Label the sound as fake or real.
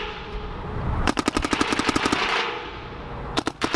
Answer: fake